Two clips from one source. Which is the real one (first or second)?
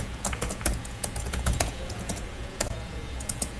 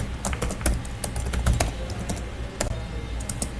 second